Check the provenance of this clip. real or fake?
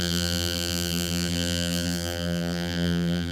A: fake